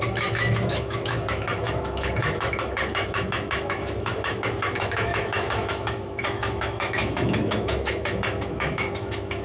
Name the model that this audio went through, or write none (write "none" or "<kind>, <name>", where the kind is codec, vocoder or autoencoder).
autoencoder, DAC-VAE